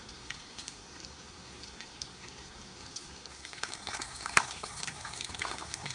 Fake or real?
fake